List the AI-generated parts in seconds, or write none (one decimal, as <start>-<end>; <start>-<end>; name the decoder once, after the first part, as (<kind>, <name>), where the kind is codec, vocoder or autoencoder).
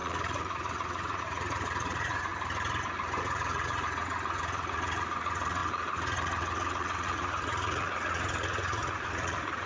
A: 0.0-2.3 (vocoder, Vocos); 3.2-9.7